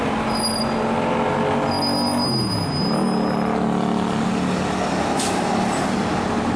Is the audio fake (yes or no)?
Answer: no